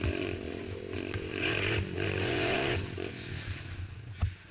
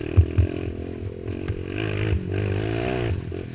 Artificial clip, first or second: first